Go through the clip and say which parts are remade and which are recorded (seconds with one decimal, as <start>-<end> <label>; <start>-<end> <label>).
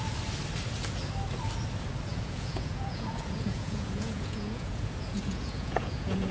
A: 0.0-2.1 recorded; 2.1-6.3 remade